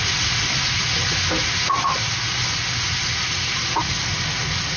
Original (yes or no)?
yes